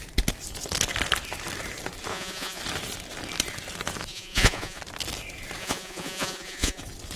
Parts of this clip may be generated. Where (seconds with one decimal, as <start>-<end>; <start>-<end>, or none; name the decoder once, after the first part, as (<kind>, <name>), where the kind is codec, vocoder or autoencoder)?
2.1-2.6 (vocoder, Vocos); 4.1-4.8; 5.6-6.8